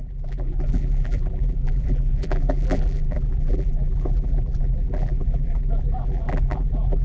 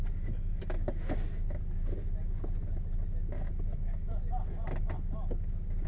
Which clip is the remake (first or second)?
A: first